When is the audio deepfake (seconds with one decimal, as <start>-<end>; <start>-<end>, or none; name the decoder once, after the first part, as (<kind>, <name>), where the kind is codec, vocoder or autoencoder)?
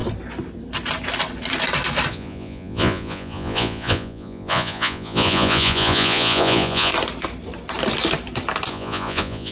2.1-6.9 (vocoder, Vocos); 8.7-9.5